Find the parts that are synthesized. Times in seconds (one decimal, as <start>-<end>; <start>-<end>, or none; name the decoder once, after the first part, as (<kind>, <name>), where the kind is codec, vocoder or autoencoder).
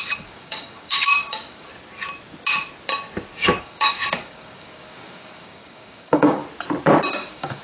0.0-1.7 (codec, DAC); 3.6-6.4; 7.1-7.6